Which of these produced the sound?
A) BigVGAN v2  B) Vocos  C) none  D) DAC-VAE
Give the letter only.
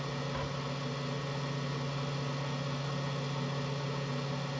C